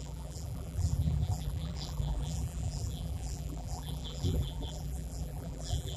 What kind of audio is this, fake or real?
fake